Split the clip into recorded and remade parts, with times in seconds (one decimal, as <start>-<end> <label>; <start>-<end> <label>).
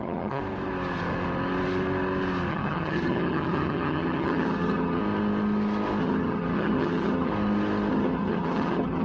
0.0-0.4 remade; 0.4-2.5 recorded; 2.5-5.0 remade; 5.0-6.0 recorded; 6.0-7.3 remade; 7.3-7.9 recorded; 7.9-9.0 remade